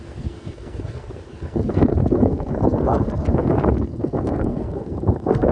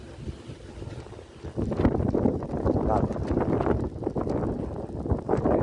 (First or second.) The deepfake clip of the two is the first